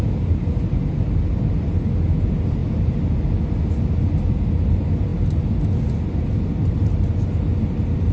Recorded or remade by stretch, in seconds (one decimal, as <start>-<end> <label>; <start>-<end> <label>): 0.0-8.1 recorded